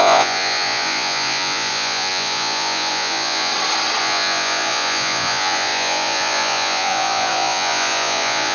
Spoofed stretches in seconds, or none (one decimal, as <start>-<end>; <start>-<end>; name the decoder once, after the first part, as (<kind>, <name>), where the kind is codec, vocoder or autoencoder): 0.0-3.5 (vocoder, Vocos); 4.0-8.5